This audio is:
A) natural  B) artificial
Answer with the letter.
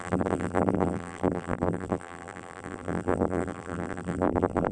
B